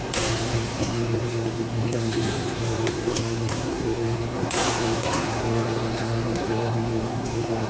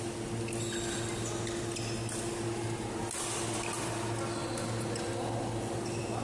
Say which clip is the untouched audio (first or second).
second